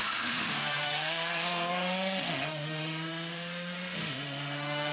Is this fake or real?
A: fake